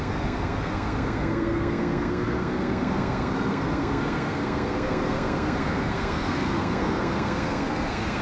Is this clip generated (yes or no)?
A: yes